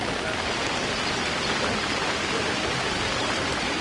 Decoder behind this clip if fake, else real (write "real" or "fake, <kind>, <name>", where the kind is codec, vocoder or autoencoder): fake, vocoder, BigVGAN v2